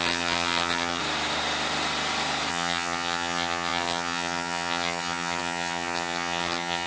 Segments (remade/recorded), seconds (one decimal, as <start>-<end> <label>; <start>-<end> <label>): 0.0-1.0 remade; 1.0-2.5 recorded; 2.5-6.9 remade

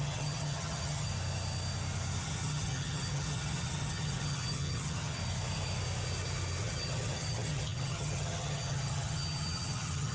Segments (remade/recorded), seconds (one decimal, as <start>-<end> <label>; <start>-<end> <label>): 0.0-1.1 remade; 1.1-2.2 recorded; 2.2-5.2 remade; 5.2-6.6 recorded; 6.6-10.1 remade